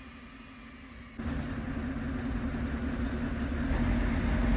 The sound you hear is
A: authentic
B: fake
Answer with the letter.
A